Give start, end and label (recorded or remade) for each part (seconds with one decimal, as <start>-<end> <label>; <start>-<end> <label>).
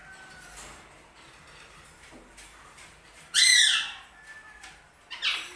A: 0.0-0.8 recorded; 0.8-3.5 remade; 3.5-5.1 recorded; 5.1-5.6 remade